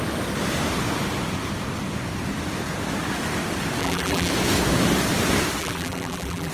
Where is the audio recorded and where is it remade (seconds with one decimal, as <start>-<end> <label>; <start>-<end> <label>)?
0.0-3.8 recorded; 3.8-4.3 remade; 4.3-5.6 recorded; 5.6-6.5 remade